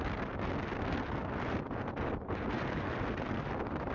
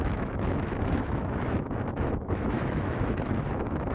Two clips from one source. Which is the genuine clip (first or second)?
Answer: first